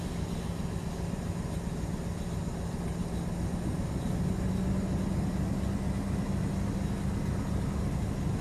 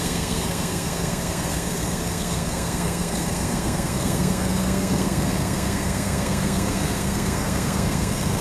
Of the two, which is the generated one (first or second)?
second